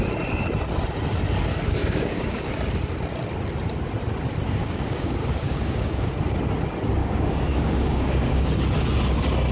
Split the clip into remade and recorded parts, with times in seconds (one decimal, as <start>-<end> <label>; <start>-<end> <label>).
0.0-1.8 recorded; 1.8-2.5 remade; 2.5-4.6 recorded; 4.6-6.2 remade; 6.2-7.0 recorded; 7.0-8.5 remade; 8.5-9.5 recorded